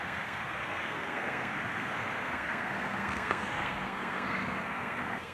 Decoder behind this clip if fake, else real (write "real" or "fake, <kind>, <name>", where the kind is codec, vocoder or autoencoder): fake, codec, SNAC